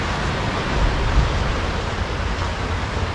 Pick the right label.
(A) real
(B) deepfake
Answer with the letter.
A